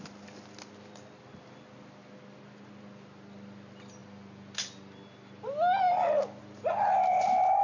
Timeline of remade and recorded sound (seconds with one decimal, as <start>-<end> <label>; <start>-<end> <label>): 0.0-7.6 recorded